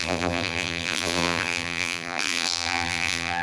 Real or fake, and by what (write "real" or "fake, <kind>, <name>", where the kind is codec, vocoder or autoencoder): fake, vocoder, BigVGAN v2